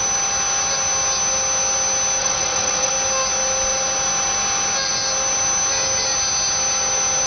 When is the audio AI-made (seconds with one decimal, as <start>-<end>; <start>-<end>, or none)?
2.2-2.9